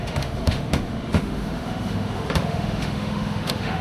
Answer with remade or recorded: remade